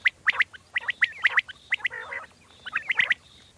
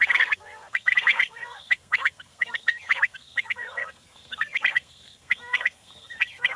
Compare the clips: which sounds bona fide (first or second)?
first